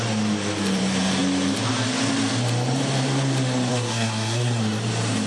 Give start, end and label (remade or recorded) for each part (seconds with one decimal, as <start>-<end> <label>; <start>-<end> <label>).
0.0-3.7 recorded; 3.7-4.6 remade; 4.6-5.3 recorded